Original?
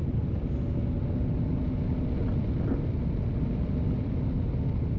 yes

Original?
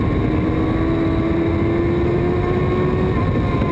yes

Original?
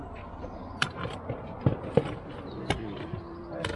yes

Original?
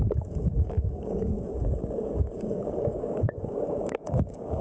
no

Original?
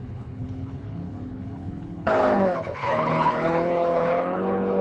no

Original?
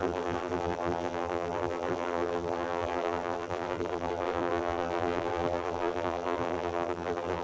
no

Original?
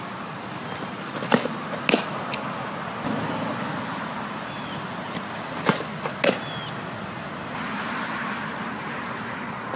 yes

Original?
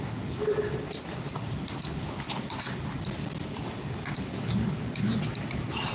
yes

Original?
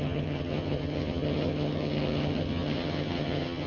no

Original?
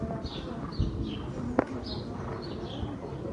yes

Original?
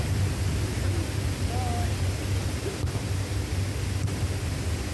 yes